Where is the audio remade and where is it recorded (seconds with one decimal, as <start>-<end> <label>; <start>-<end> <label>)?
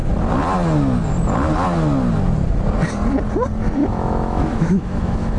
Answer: 0.0-3.8 recorded; 3.8-5.4 remade